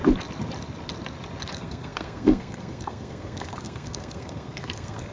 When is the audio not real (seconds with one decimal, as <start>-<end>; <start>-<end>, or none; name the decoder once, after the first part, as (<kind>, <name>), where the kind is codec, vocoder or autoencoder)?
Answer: 1.5-5.1 (codec, SNAC)